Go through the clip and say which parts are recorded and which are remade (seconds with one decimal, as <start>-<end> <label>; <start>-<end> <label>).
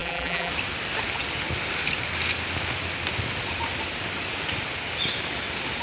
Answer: 0.0-0.5 remade; 0.5-5.8 recorded